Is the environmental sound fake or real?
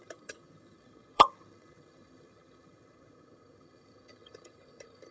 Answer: fake